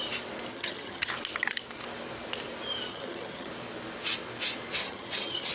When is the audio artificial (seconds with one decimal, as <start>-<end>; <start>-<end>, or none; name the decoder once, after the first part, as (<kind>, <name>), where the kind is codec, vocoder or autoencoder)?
0.5-1.1 (vocoder, HiFi-GAN); 2.9-3.5; 4.8-5.5